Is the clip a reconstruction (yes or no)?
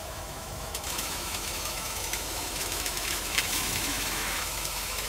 yes